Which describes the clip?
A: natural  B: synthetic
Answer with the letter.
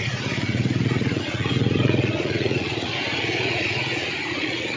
B